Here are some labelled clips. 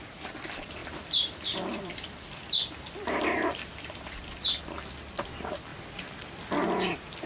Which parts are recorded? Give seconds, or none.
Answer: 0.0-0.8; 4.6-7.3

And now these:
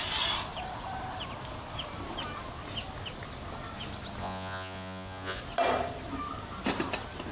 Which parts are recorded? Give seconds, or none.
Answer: 0.0-4.2; 5.4-7.3

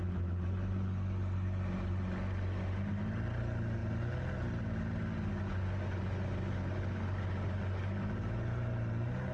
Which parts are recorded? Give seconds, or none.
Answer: 0.0-9.3

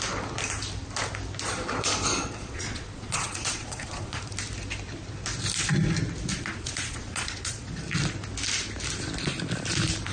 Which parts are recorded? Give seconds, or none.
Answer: 0.0-2.3; 4.3-6.3; 7.8-10.1

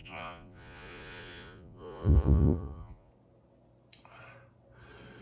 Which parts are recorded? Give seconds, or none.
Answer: 3.1-5.2

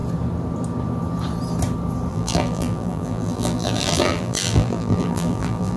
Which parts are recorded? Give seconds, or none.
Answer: 0.0-2.1